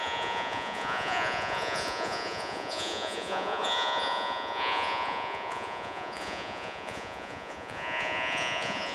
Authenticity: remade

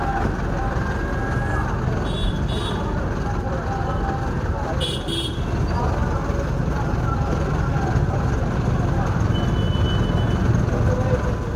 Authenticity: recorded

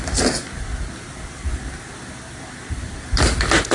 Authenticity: remade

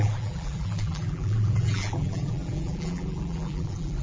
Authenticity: remade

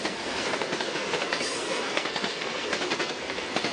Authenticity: remade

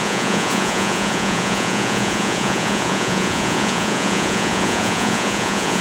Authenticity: remade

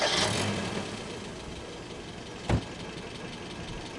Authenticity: recorded